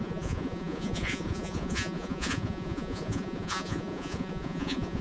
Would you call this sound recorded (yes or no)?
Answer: no